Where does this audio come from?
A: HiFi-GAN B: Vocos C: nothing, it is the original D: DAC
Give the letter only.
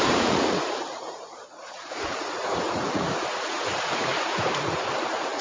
B